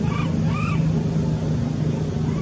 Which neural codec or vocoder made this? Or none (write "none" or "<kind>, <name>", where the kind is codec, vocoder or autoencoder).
none